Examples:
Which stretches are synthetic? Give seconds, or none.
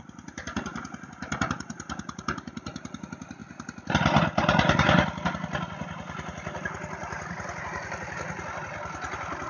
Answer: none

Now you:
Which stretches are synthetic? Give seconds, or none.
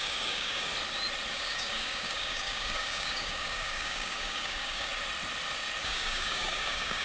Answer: 0.0-0.7 (codec, DAC); 1.3-4.9; 5.8-7.0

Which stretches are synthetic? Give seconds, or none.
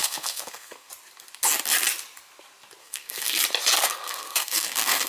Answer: 0.0-0.9 (codec, SNAC); 2.8-3.4; 3.8-5.1